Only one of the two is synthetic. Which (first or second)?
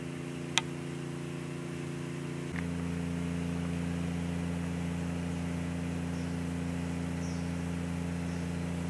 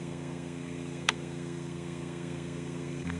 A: second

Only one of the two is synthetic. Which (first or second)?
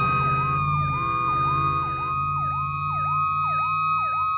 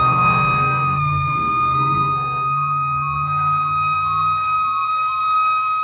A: second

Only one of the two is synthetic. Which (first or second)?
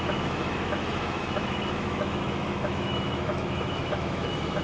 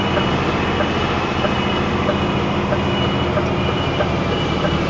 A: first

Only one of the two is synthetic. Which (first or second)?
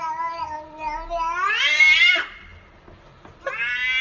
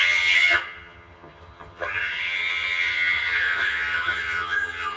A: second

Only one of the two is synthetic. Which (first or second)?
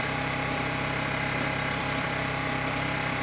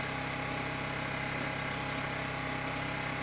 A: first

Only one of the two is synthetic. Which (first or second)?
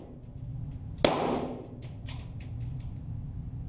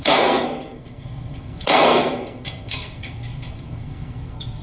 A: second